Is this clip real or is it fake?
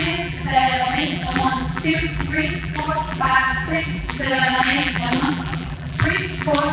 fake